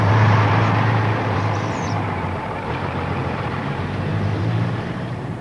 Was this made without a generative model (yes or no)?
no